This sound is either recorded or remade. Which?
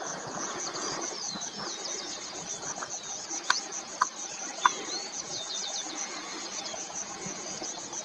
remade